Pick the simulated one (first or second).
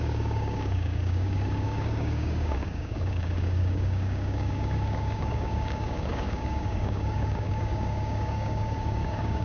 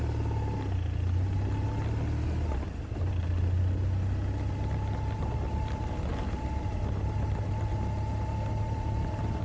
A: first